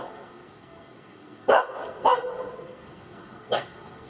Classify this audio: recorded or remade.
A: remade